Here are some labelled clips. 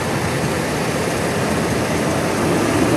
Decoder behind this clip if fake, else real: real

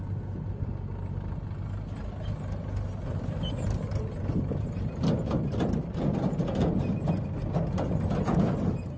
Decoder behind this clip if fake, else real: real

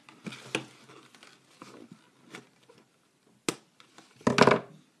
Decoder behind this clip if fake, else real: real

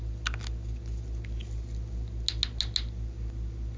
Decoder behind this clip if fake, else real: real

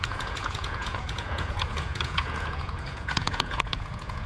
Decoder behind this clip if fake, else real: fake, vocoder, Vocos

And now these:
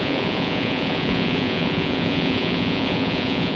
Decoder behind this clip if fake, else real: fake, vocoder, Vocos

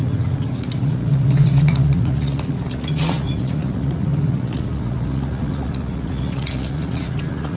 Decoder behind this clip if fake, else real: fake, vocoder, Vocos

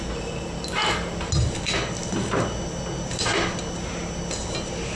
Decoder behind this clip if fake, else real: real